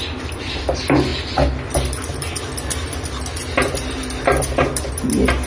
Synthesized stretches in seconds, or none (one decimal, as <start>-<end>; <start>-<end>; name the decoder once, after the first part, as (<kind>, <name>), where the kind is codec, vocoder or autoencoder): none